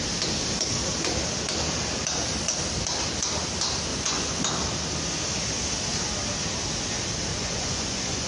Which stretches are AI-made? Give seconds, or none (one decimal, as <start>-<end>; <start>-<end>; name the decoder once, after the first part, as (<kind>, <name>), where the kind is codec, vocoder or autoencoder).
3.9-4.4 (vocoder, Vocos); 7.3-8.3